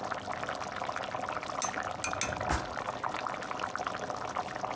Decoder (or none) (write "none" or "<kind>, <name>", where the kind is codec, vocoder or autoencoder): none